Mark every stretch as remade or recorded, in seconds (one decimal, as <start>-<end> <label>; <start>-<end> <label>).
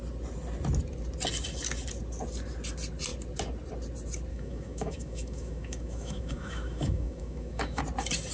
0.0-4.3 recorded; 4.3-7.8 remade; 7.8-8.3 recorded